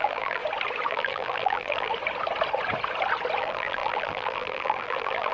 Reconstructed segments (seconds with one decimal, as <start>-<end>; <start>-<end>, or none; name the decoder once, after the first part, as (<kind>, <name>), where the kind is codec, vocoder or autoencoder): 0.0-0.4 (vocoder, BigVGAN v2); 0.9-1.9; 3.4-5.3